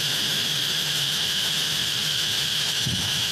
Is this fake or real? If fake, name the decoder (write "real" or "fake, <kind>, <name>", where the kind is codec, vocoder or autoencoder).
fake, autoencoder, DAC-VAE